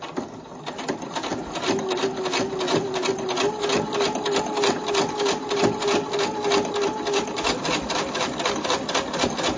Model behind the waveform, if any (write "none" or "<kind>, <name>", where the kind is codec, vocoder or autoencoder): none